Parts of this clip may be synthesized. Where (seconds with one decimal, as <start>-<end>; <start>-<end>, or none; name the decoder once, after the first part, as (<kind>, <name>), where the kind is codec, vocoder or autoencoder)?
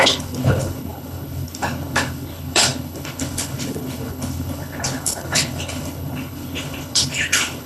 0.0-7.7 (codec, HILCodec)